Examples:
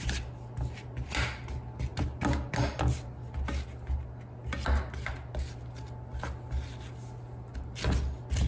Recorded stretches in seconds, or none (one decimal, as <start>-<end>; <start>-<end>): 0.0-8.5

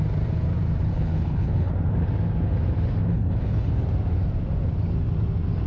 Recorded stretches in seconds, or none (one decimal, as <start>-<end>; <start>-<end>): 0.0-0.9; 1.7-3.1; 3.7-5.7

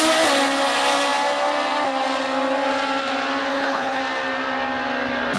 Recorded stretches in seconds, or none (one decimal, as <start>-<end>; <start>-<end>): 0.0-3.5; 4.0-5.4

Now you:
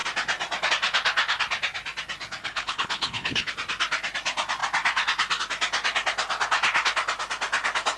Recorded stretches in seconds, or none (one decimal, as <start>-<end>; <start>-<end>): 0.0-2.4; 3.5-8.0

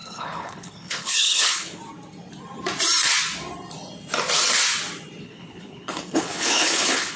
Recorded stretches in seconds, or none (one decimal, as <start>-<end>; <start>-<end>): 1.8-5.2